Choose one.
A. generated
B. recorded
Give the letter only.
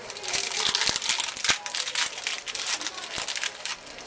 B